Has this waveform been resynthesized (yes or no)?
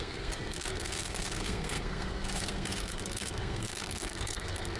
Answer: yes